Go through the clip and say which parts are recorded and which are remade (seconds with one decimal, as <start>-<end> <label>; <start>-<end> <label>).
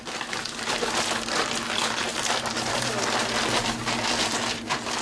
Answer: 0.0-5.0 recorded